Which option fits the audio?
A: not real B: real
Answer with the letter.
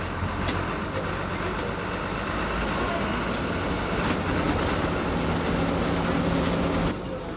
B